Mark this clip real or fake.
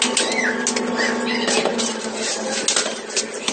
real